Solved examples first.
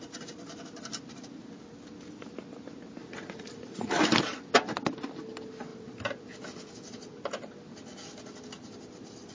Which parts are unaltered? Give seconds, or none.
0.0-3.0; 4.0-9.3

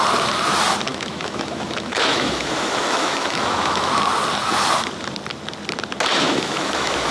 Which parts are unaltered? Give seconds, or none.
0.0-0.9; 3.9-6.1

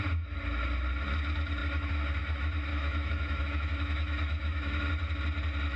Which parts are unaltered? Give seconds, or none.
0.0-2.7; 4.9-5.8

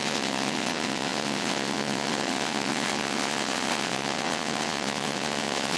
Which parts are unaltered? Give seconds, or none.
none